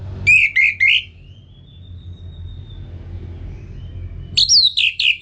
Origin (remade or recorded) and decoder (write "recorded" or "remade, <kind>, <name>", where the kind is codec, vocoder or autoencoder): recorded